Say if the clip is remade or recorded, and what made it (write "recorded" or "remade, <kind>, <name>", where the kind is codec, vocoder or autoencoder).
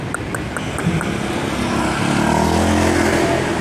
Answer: recorded